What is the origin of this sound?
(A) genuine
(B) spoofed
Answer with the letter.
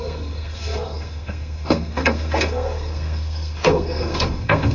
B